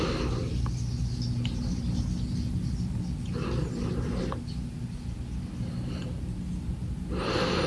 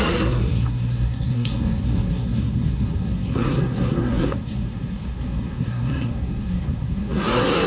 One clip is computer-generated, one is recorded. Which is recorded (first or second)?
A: first